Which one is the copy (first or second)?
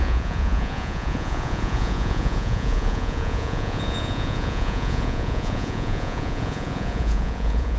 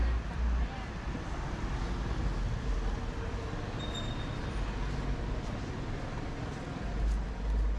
first